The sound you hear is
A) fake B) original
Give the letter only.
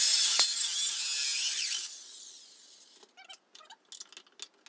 B